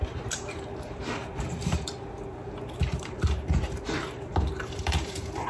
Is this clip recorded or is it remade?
remade